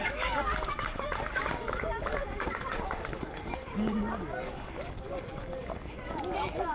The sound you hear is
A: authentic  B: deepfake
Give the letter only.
B